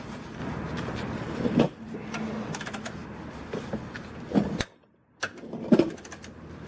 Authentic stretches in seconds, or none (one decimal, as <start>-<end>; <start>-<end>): 2.0-2.5